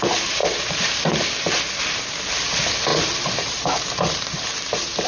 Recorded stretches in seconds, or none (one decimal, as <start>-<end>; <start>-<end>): 0.0-0.4; 1.1-2.9